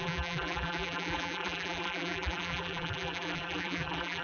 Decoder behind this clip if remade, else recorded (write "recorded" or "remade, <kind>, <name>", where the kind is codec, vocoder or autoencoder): remade, vocoder, BigVGAN v2